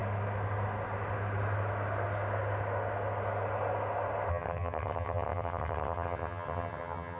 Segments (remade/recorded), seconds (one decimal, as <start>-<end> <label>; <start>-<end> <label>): 0.0-4.3 recorded; 4.3-7.2 remade